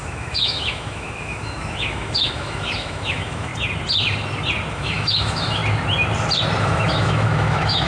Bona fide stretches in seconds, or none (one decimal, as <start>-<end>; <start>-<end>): 3.5-4.7; 5.6-6.6